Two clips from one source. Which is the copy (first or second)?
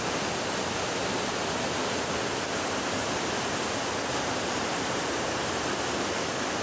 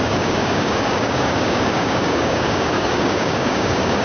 second